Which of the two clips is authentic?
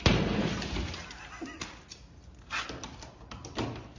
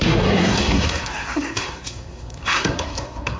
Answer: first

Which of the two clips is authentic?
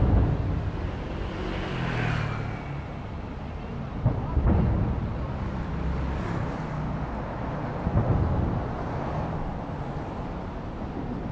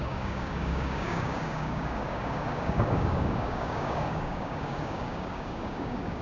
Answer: first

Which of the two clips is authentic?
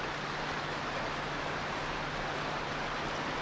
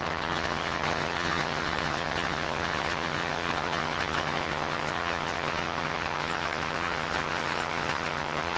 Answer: first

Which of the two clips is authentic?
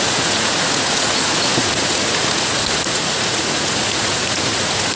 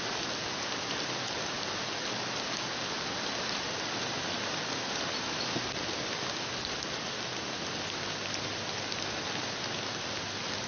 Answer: second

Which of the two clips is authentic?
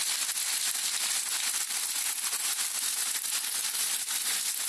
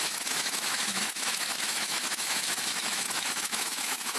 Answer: first